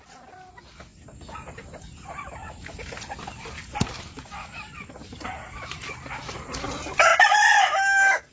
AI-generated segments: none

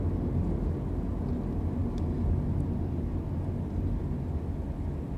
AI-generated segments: none

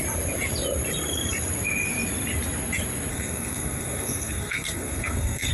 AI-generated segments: 3.1-5.5

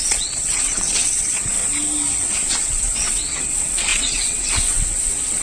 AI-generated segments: 0.0-1.6; 2.5-5.4